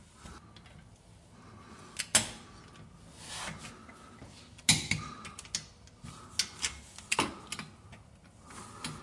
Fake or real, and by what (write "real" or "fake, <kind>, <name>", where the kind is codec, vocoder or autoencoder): real